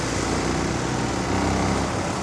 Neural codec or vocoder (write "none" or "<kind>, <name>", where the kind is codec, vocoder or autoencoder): none